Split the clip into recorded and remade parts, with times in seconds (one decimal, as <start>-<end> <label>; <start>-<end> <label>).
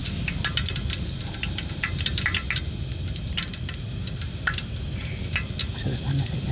0.0-6.5 recorded